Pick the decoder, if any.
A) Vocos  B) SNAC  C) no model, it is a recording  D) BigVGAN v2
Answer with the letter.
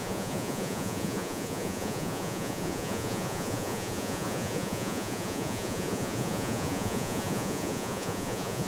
A